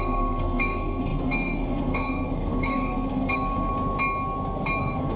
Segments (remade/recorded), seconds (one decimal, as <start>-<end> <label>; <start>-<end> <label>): 0.0-3.7 remade; 3.7-4.8 recorded; 4.8-5.2 remade